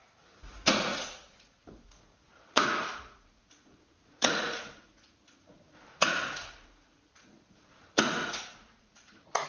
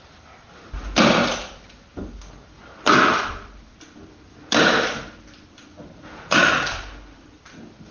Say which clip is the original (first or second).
second